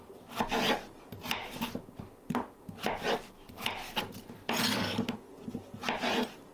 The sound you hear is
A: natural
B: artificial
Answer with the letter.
A